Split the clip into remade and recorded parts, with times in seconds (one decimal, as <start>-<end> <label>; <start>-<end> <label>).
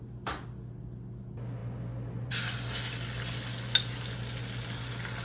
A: 0.0-5.2 recorded